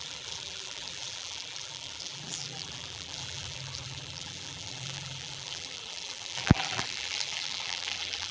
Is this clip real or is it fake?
fake